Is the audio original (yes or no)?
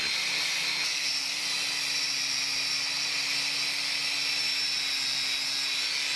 yes